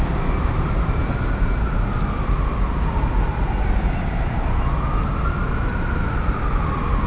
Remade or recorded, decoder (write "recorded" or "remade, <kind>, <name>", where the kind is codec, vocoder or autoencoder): recorded